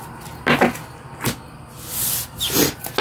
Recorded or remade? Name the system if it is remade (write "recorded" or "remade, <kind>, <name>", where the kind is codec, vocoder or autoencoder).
recorded